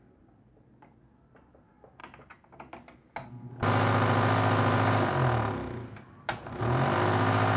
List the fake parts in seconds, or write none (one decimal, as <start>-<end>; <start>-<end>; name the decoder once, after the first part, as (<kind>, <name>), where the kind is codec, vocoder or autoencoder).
none